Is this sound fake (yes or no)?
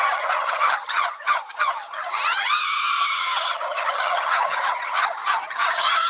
yes